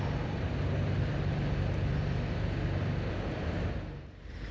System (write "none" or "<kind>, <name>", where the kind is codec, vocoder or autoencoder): none